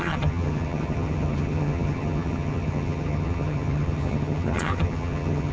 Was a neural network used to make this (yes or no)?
yes